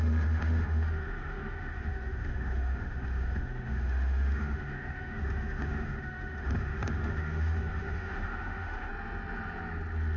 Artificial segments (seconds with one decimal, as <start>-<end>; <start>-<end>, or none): 0.0-8.9